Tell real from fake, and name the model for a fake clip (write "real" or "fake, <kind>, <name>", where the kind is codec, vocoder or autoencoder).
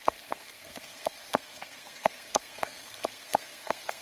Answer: fake, codec, SNAC